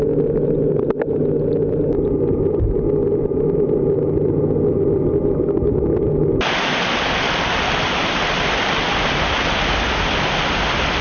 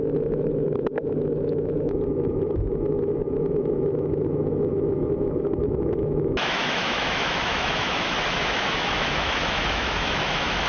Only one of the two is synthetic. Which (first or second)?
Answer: second